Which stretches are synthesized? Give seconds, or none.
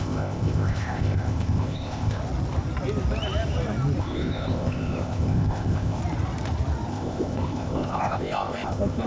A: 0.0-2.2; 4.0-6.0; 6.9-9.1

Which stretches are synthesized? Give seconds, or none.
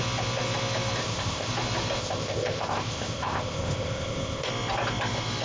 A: 1.0-1.5; 2.0-4.5